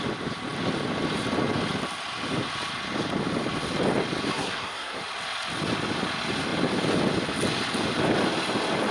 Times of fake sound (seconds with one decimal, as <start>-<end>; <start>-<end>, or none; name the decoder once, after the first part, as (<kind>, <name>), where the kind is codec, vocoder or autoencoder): 4.3-5.0 (codec, SNAC)